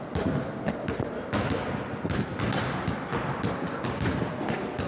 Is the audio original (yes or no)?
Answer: yes